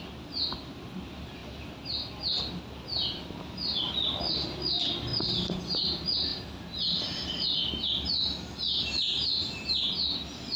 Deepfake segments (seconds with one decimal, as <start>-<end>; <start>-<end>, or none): none